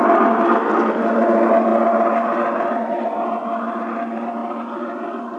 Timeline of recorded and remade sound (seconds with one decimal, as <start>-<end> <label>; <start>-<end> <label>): 0.0-5.4 recorded